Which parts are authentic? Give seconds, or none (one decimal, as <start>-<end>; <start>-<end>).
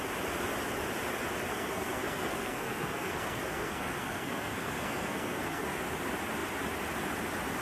0.0-1.5; 5.7-7.6